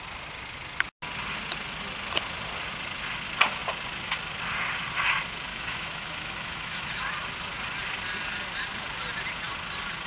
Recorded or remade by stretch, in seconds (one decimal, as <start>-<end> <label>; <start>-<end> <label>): 0.0-5.5 recorded; 5.5-7.0 remade; 7.0-10.1 recorded